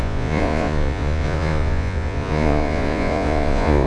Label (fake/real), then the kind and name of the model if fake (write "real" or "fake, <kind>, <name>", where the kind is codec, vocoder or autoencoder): fake, vocoder, Vocos